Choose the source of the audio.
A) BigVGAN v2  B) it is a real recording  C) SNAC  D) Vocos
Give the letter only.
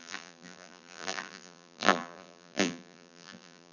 A